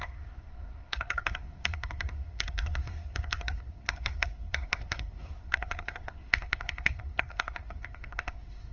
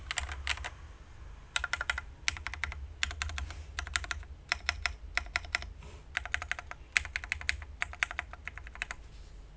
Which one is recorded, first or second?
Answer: second